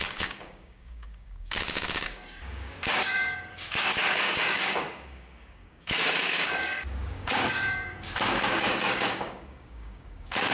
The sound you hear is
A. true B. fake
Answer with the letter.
B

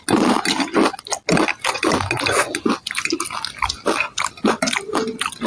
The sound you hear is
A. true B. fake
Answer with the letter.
A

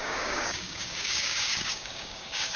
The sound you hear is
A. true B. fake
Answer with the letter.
B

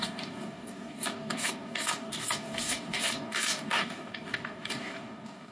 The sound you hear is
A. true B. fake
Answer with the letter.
B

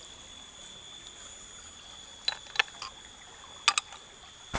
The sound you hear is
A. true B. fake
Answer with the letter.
A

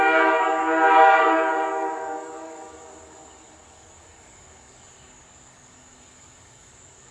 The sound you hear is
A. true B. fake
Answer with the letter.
B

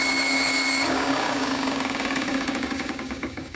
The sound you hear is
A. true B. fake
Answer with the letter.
B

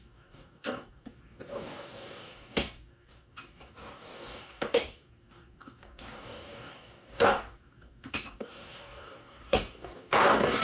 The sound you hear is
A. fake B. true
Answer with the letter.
A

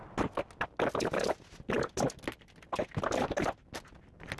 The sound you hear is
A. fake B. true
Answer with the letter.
B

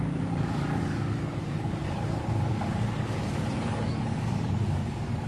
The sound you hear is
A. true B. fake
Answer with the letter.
B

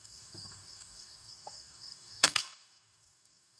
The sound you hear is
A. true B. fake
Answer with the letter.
B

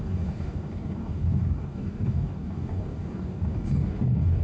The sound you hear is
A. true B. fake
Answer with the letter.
B